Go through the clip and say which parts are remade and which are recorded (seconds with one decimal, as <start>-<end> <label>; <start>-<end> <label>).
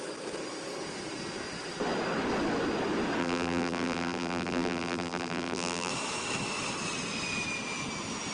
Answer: 0.0-3.2 recorded; 3.2-5.9 remade; 5.9-8.3 recorded